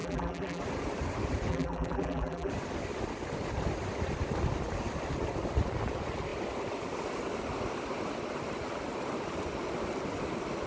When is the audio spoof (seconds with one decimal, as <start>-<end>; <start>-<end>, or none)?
0.0-0.6; 1.5-2.5